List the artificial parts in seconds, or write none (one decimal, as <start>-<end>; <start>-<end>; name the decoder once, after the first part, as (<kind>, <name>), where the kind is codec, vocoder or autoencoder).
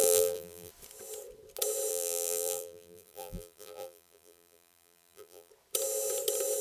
0.0-0.7 (vocoder, BigVGAN v2); 1.9-5.5